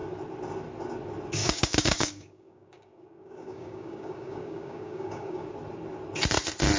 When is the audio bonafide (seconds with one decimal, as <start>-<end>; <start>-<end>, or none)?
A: 0.0-1.4; 5.5-6.8